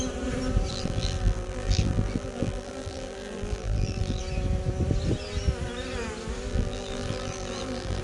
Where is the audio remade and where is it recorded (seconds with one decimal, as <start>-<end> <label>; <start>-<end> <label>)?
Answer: 0.0-0.7 recorded; 0.7-4.2 remade; 4.2-6.5 recorded; 6.5-8.0 remade